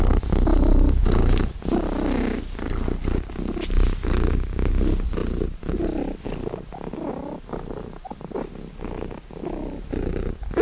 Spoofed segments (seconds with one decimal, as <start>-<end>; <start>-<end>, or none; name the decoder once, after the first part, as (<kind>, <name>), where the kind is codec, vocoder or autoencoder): none